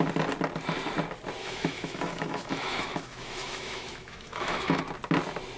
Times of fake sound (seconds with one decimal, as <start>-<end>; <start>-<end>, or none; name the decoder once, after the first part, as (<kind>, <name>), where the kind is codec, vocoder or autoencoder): 1.4-4.8 (autoencoder, DAC-VAE)